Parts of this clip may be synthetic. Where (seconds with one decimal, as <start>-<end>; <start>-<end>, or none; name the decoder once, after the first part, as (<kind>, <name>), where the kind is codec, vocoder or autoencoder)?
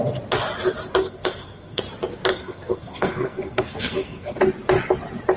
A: 1.0-1.8 (codec, SNAC); 2.3-4.4